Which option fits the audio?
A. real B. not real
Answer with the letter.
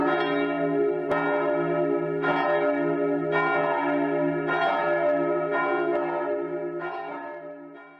A